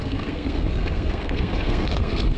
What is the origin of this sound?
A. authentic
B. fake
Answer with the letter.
B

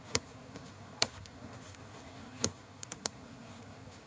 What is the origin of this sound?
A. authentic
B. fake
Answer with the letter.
B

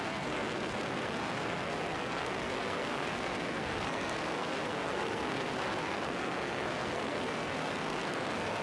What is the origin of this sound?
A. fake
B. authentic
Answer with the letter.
A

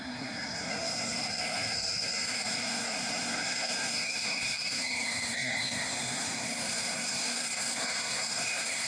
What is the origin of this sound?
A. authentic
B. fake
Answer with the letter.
B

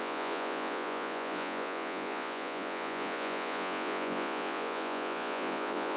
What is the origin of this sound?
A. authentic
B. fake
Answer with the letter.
B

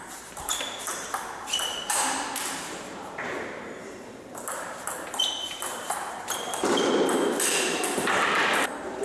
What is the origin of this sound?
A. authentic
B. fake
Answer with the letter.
B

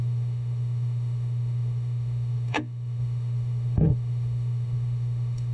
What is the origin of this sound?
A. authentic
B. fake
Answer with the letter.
B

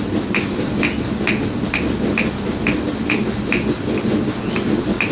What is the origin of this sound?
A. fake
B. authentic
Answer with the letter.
B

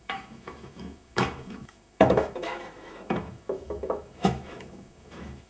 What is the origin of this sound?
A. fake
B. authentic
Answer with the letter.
A